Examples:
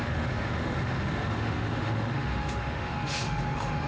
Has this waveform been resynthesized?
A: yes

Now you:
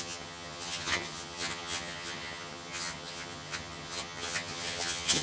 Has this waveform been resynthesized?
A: yes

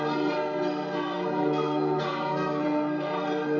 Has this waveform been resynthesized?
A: yes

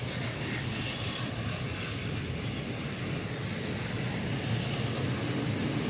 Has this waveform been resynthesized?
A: no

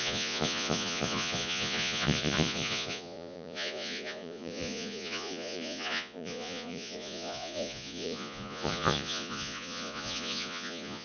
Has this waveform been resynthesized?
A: yes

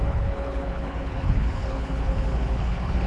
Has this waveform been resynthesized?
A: yes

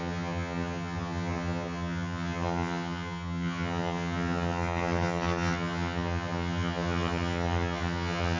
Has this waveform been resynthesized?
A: yes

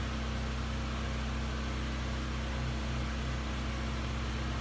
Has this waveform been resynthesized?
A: no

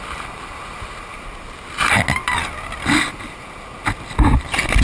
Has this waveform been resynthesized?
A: no